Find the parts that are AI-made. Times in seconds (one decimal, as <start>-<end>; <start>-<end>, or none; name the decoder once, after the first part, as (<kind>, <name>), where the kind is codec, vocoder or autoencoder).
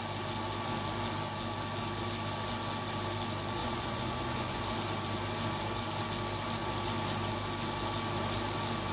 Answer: 3.6-4.6 (vocoder, Vocos)